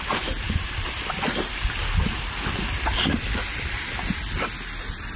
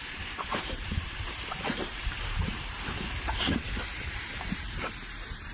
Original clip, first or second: first